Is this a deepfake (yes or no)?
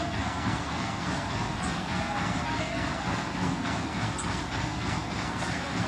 yes